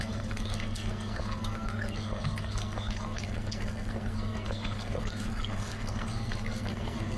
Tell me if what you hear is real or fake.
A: fake